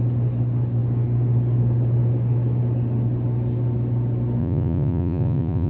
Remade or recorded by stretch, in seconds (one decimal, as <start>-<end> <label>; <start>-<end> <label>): 0.0-4.4 recorded; 4.4-5.7 remade